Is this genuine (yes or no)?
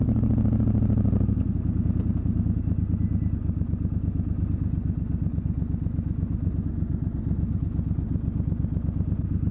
yes